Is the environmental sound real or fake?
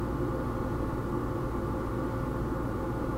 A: real